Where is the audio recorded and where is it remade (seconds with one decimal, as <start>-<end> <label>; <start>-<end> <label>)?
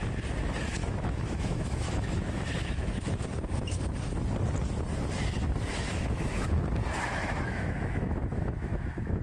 0.0-0.8 recorded; 0.8-3.1 remade; 3.1-5.7 recorded; 5.7-6.6 remade; 6.6-7.1 recorded; 7.1-9.2 remade